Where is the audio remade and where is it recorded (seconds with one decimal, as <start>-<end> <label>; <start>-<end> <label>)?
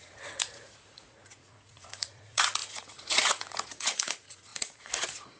0.0-5.4 remade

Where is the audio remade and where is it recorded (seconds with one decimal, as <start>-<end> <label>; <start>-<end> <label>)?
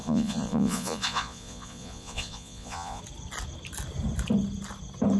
0.0-3.0 remade; 3.0-5.2 recorded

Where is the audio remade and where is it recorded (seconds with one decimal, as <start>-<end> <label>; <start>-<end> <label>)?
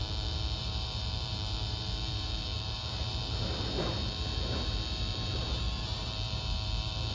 0.0-7.1 remade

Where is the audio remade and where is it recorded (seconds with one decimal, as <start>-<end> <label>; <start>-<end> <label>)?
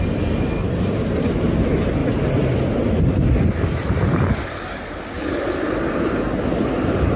0.0-7.2 recorded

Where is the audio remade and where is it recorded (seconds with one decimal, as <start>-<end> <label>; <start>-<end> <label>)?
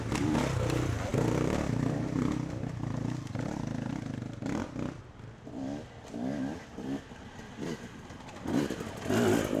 0.0-9.6 recorded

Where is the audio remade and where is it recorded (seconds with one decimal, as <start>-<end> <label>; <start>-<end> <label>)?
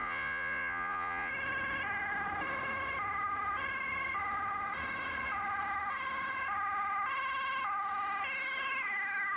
0.0-1.3 remade; 1.3-9.4 recorded